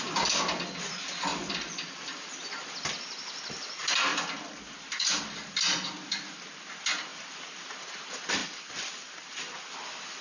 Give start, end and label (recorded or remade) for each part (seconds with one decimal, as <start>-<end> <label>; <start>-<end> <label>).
0.0-1.3 recorded; 1.3-1.9 remade; 1.9-4.1 recorded; 4.1-4.6 remade; 4.6-7.1 recorded; 7.1-7.9 remade; 7.9-8.4 recorded; 8.4-9.6 remade; 9.6-10.2 recorded